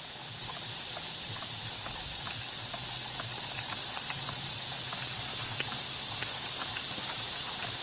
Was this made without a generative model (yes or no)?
yes